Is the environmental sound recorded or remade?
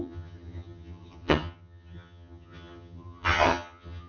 remade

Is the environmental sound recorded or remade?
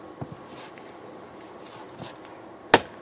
recorded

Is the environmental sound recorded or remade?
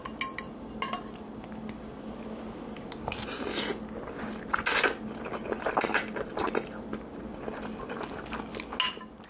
recorded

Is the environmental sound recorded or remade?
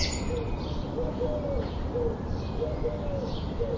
recorded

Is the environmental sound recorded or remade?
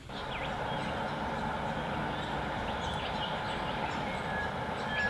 recorded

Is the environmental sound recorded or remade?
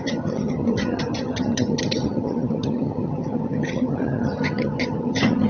remade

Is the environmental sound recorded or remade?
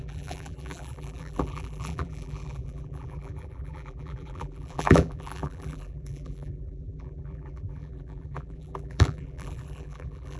remade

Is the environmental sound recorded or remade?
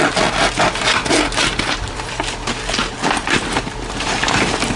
recorded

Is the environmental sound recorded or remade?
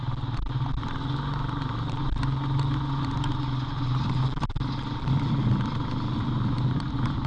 recorded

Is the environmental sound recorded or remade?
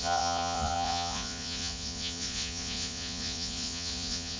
remade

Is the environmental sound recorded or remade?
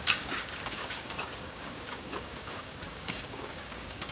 remade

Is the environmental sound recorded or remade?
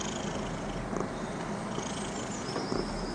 recorded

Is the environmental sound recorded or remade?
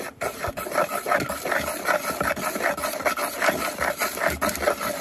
recorded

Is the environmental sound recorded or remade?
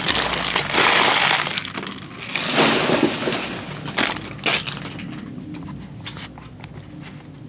recorded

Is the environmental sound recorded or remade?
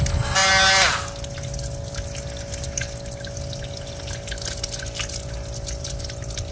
recorded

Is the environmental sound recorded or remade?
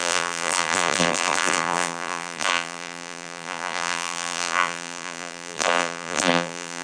remade